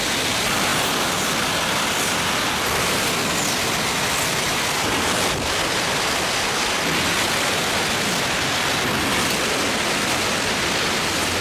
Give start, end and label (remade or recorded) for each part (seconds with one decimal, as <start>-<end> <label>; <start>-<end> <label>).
0.0-11.4 recorded